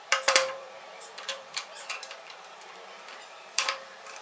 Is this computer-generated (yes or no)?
yes